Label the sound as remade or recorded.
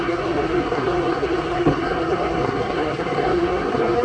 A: remade